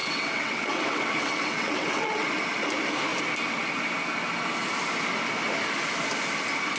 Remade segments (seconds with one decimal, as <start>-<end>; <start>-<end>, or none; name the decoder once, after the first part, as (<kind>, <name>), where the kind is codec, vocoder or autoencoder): 0.0-2.3 (vocoder, WaveNeXt)